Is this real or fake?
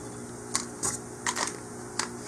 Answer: real